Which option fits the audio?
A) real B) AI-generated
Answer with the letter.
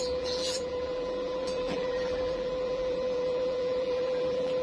B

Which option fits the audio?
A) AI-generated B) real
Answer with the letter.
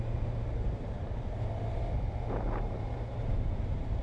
A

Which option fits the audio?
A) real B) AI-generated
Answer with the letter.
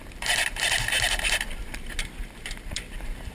B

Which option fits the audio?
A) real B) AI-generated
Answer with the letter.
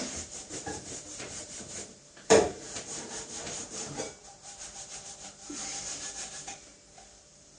B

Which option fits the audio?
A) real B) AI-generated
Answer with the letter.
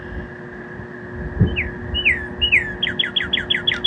A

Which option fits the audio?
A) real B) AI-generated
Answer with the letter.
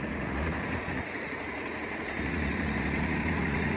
B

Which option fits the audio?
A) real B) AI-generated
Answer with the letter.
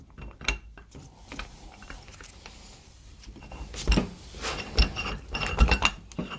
A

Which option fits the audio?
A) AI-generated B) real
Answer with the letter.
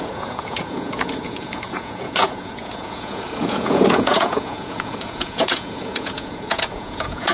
A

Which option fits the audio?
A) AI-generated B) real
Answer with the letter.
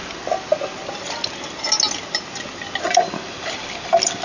B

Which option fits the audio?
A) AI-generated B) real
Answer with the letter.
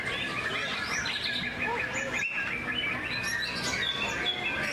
B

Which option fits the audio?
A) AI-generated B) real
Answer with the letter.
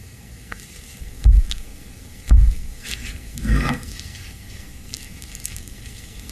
A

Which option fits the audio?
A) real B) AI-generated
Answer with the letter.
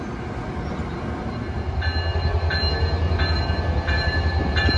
A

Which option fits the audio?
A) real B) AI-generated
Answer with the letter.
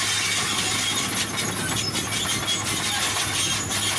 A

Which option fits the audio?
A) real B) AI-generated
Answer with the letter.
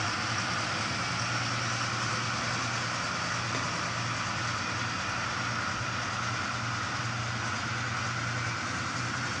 A